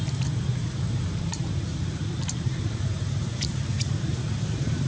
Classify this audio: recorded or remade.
remade